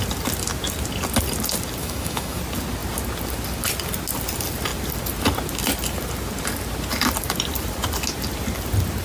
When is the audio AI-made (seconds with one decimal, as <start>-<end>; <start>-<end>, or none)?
1.8-2.4